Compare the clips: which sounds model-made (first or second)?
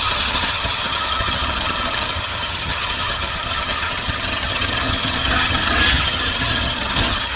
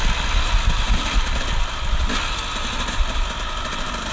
first